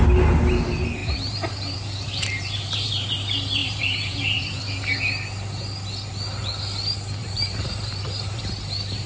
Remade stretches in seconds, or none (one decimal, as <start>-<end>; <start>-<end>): 1.0-3.1; 3.6-4.6; 7.2-8.4